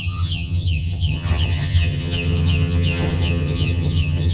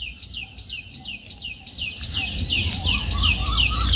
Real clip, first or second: second